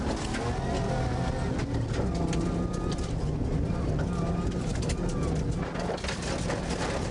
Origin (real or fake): real